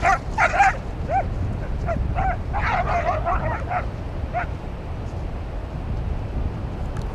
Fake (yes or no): no